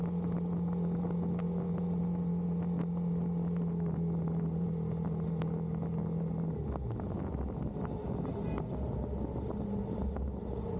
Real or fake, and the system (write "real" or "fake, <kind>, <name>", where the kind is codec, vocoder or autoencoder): real